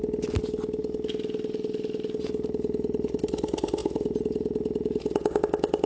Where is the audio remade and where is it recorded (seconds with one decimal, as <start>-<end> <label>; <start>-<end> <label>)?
0.0-3.8 recorded; 3.8-5.4 remade; 5.4-5.9 recorded